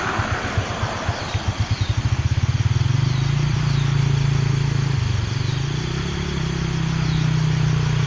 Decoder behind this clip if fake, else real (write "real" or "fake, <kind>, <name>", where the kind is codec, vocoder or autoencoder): real